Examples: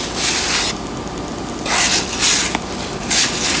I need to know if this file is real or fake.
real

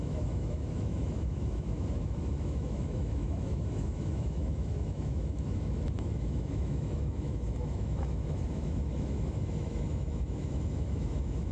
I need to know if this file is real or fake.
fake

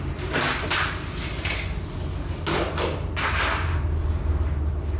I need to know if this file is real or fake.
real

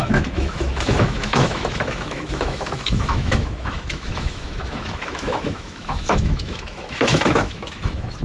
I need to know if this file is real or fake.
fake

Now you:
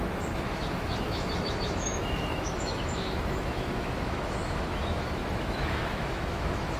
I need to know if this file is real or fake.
fake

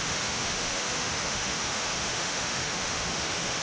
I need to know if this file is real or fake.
fake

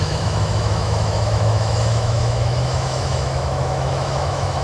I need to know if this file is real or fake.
fake